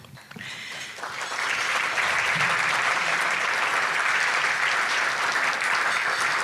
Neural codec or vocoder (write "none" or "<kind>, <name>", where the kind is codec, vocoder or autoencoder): vocoder, BigVGAN v2